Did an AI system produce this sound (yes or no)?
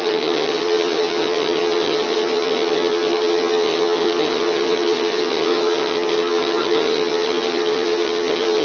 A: yes